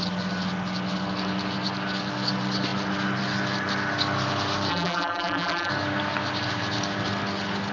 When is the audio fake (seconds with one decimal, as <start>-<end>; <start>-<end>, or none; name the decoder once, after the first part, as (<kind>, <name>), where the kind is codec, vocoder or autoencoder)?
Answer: 4.7-5.7 (vocoder, BigVGAN v2)